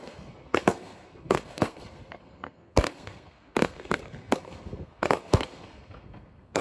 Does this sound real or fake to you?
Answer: fake